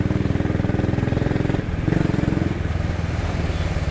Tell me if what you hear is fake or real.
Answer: real